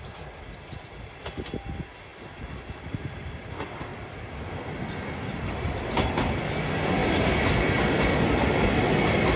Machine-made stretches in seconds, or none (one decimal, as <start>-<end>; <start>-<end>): none